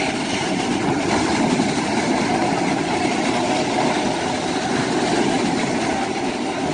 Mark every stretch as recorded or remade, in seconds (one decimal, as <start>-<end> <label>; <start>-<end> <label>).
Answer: 0.0-2.4 remade; 2.4-6.7 recorded